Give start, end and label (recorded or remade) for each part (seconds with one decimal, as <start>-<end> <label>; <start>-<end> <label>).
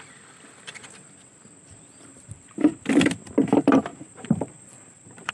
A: 0.0-2.1 recorded; 2.1-2.9 remade; 2.9-3.9 recorded; 3.9-5.3 remade